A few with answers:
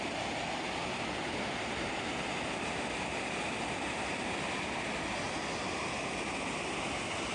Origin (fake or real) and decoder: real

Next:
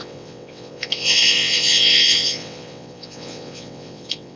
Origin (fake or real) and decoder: fake, vocoder, WaveNeXt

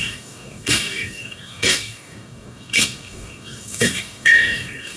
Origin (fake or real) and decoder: fake, codec, DAC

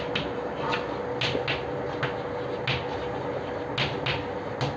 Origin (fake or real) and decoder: real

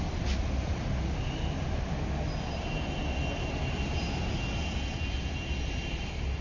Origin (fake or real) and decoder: real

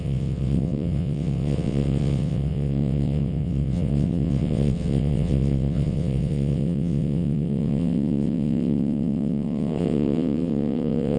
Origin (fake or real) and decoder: fake, vocoder, WaveNeXt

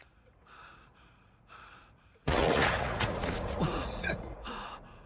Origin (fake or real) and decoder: fake, vocoder, Vocos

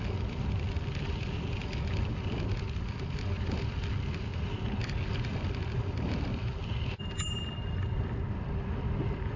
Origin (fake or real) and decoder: real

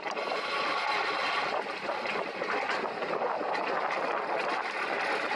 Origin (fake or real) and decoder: real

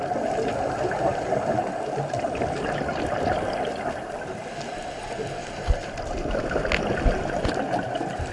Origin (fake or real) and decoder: real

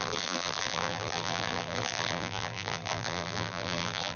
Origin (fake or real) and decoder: fake, vocoder, BigVGAN v2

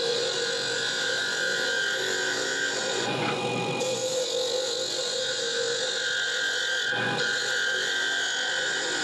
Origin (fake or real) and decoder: fake, vocoder, Vocos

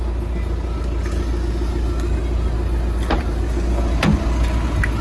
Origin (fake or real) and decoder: real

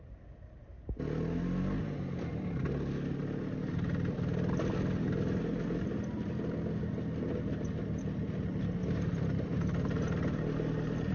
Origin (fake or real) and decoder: real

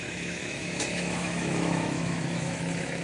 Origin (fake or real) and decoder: fake, autoencoder, DAC-VAE